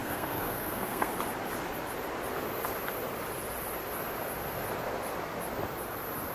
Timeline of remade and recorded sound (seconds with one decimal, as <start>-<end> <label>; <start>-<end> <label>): 0.0-1.1 remade; 1.1-6.3 recorded